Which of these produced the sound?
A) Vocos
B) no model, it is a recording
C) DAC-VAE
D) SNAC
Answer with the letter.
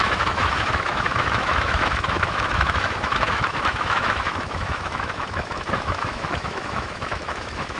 C